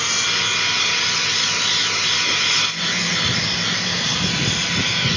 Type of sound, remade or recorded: recorded